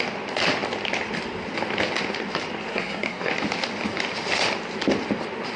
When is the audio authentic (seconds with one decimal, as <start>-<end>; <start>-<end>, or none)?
0.0-2.7; 3.3-5.6